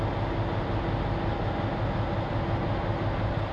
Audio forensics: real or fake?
real